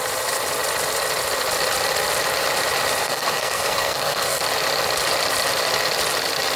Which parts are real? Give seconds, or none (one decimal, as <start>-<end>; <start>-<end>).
0.0-3.0; 4.4-6.6